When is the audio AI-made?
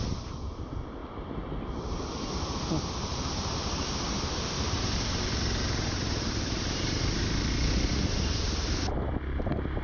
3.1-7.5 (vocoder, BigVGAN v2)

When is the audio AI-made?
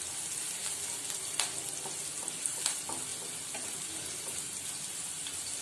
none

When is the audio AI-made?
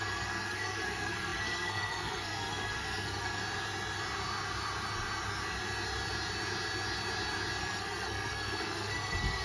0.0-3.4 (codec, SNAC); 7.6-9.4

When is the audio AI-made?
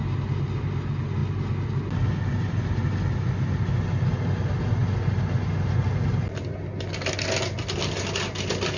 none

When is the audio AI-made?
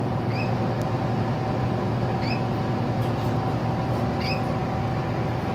none